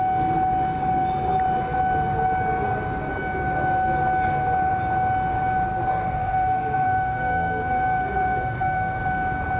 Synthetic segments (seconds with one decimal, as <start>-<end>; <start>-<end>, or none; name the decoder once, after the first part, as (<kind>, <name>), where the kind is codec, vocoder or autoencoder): 5.9-9.0 (codec, SNAC)